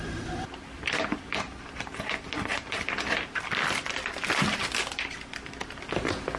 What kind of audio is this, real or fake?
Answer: fake